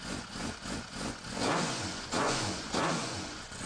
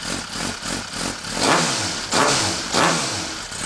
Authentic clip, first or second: second